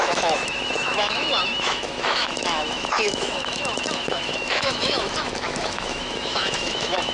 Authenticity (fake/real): fake